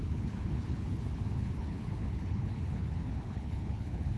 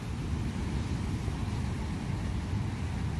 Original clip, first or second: second